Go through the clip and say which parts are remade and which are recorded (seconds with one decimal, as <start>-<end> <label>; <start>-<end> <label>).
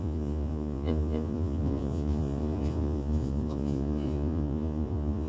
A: 0.0-5.3 remade